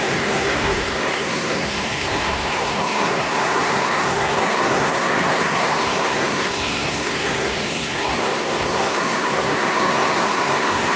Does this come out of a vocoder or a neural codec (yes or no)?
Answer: yes